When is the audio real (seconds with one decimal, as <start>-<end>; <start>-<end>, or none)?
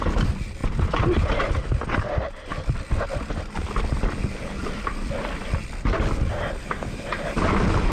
0.0-7.9